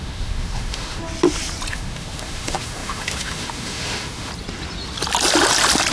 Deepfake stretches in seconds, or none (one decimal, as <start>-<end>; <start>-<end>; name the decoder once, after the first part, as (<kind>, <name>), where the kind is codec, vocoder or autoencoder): 0.0-1.0 (autoencoder, DAC-VAE); 1.7-4.3